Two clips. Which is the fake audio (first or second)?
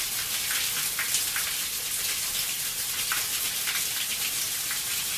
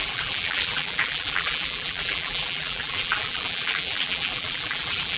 second